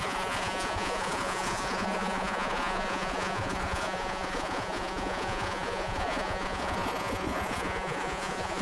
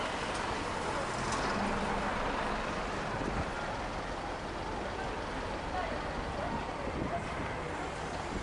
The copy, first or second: first